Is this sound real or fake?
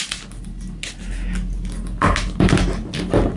real